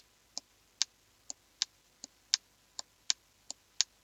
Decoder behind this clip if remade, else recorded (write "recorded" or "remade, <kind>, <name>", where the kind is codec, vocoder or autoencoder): recorded